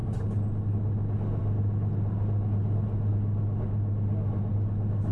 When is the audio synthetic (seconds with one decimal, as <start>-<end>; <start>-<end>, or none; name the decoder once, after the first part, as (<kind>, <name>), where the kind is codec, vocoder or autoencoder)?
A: none